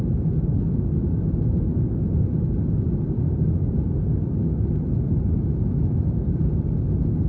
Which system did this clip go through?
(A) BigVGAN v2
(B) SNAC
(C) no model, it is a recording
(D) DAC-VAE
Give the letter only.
C